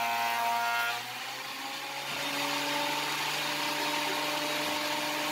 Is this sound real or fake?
real